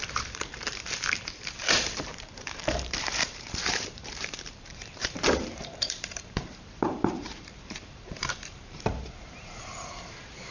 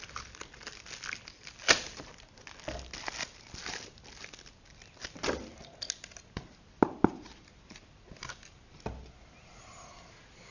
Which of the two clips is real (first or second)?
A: second